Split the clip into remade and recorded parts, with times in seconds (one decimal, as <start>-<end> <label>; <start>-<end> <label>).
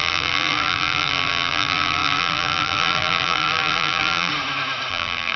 0.0-4.3 remade; 4.3-4.9 recorded; 4.9-5.4 remade